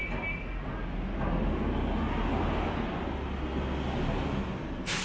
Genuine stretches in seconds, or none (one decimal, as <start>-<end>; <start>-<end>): 0.0-5.0